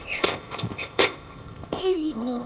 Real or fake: fake